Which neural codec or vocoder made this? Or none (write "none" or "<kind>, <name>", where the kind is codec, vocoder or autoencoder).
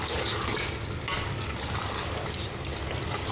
none